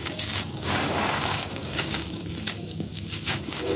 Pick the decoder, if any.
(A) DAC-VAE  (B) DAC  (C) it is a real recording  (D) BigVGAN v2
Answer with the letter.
B